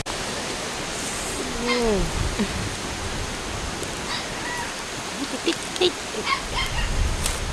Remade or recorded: recorded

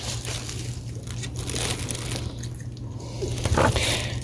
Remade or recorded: recorded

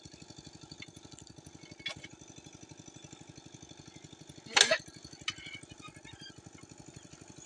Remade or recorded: recorded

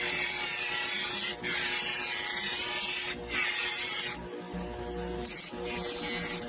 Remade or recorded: recorded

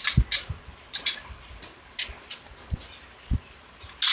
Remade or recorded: recorded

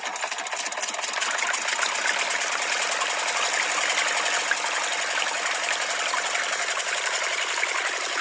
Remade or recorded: recorded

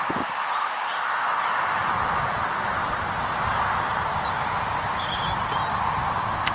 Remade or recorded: recorded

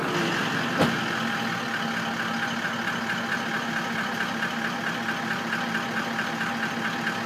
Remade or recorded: recorded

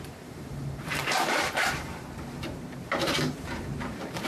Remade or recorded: remade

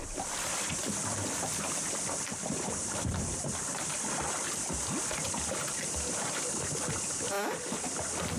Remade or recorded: recorded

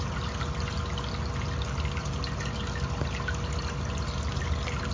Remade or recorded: recorded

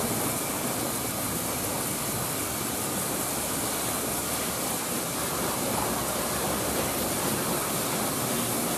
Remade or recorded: recorded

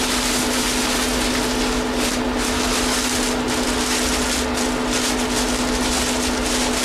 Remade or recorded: remade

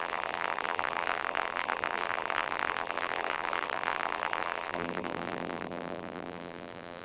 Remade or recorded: remade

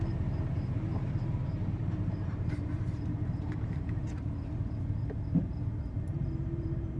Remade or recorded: remade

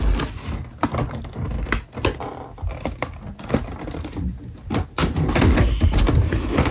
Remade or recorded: recorded